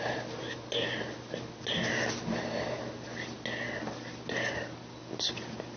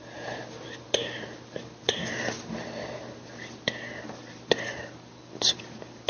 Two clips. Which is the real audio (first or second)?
first